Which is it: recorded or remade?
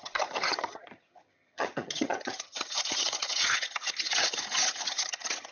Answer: remade